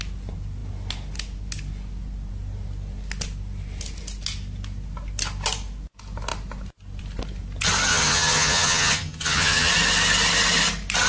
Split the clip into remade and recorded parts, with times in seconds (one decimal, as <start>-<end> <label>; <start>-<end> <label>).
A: 0.0-7.9 recorded; 7.9-9.7 remade; 9.7-11.1 recorded